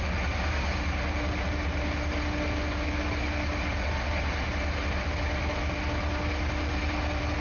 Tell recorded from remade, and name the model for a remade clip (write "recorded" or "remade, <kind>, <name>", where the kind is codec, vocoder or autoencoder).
recorded